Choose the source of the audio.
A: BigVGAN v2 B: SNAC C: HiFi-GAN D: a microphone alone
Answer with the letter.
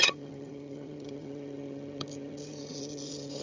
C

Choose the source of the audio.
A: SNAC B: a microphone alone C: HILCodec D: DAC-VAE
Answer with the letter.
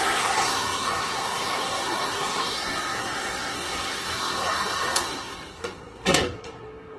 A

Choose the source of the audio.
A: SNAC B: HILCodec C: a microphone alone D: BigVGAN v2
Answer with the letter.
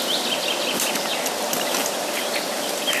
C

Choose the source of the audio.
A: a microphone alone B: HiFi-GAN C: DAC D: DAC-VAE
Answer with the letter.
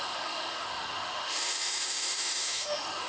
D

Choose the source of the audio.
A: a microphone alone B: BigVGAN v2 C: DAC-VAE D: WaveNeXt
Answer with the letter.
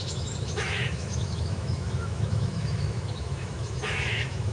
C